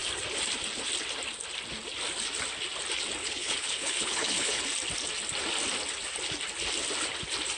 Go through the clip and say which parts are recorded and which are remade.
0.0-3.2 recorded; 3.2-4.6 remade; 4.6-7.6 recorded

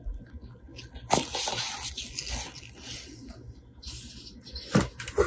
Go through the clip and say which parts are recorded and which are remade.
0.0-5.3 recorded